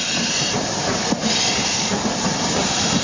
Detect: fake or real fake